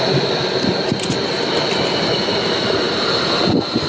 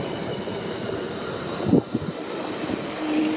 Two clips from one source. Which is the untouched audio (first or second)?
first